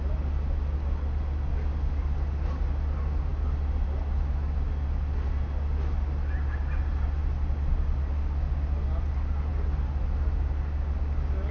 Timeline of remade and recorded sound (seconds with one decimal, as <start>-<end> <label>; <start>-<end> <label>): 0.0-11.5 recorded